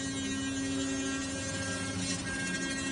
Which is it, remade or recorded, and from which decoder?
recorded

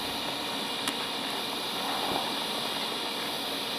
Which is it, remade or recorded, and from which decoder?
recorded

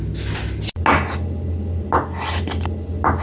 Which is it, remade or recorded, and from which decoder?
recorded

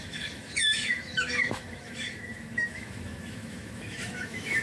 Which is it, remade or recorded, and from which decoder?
remade, autoencoder, DAC-VAE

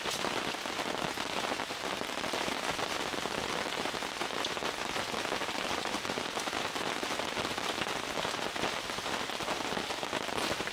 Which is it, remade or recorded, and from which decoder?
recorded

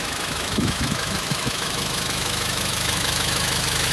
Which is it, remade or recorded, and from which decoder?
remade, autoencoder, DAC-VAE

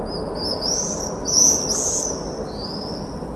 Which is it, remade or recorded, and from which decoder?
recorded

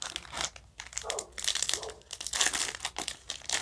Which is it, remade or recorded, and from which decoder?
recorded